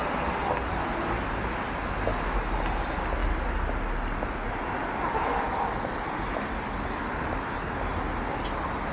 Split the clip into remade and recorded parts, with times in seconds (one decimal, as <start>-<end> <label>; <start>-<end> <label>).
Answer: 0.0-8.9 recorded